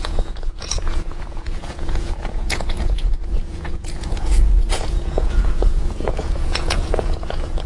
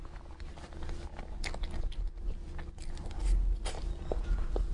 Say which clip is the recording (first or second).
second